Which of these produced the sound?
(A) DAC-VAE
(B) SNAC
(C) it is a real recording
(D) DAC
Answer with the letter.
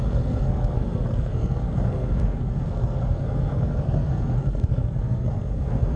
B